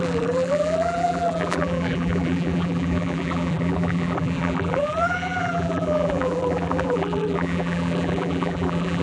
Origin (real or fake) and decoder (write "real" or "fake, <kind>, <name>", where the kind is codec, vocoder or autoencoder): fake, vocoder, BigVGAN v2